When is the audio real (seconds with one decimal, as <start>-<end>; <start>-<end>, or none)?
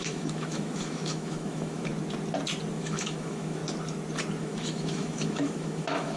1.9-2.7; 3.6-4.4